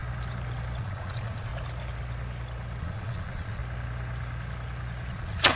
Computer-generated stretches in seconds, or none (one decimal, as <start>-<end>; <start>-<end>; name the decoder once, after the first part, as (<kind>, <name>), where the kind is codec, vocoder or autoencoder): 0.8-1.5 (vocoder, Vocos); 2.8-3.6; 5.1-5.6